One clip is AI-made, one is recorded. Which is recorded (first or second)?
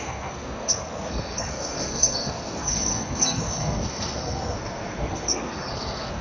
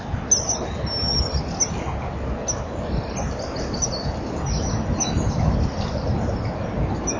second